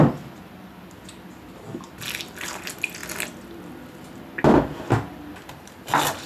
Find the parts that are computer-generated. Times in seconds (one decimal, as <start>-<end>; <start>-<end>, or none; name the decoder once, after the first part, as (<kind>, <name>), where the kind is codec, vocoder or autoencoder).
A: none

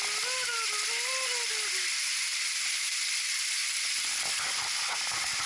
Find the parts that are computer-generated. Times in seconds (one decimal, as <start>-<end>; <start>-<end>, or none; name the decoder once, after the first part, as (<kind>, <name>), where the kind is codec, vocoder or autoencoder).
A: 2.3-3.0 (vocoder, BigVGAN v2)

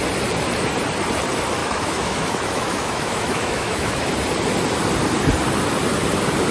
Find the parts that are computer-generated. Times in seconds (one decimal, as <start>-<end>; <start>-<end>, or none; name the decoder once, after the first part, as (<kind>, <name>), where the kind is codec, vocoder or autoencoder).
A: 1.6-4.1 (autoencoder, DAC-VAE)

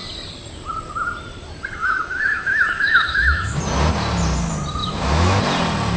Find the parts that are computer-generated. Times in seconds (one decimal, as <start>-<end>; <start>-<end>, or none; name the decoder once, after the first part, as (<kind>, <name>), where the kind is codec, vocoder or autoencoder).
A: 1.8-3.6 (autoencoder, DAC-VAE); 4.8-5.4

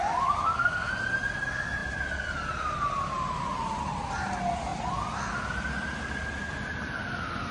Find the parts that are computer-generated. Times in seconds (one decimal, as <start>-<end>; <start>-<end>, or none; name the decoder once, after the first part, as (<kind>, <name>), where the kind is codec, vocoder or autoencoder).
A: 0.4-0.9 (codec, SNAC)

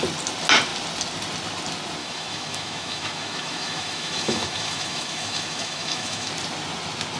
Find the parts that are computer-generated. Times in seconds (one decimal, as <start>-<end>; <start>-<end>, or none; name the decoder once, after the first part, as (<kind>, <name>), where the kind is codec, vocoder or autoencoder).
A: 2.0-6.3 (autoencoder, DAC-VAE)